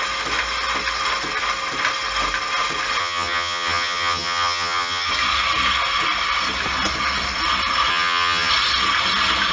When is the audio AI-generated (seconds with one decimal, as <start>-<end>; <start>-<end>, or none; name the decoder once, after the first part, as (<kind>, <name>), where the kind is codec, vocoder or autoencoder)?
3.0-5.1 (vocoder, HiFi-GAN); 7.9-8.5